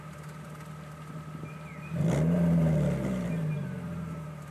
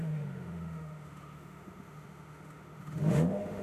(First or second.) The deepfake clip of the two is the second